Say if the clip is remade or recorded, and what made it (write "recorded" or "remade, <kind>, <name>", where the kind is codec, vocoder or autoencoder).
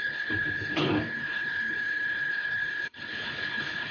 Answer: remade, codec, HILCodec